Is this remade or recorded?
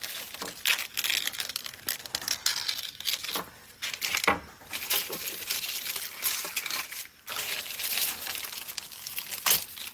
recorded